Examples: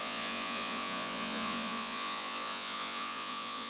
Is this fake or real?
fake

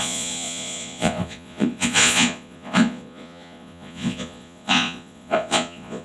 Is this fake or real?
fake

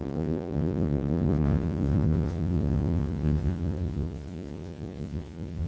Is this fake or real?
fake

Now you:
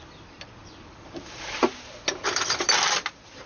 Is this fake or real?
real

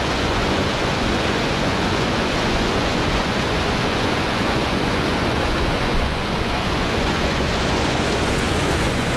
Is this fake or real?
fake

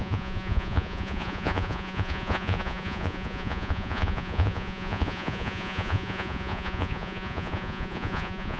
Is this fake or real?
fake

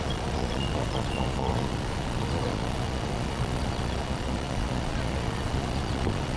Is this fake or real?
fake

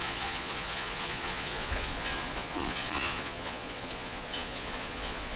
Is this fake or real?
fake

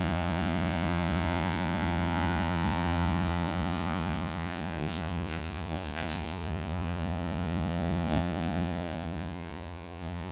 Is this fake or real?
fake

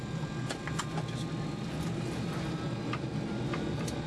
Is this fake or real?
real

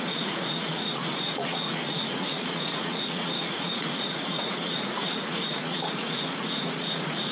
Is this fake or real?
fake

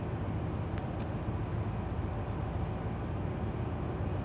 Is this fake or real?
real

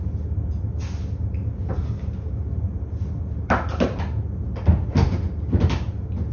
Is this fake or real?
real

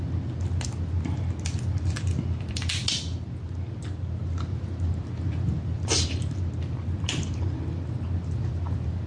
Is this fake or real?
real